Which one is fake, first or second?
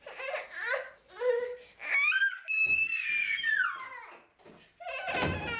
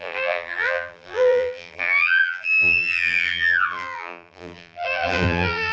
second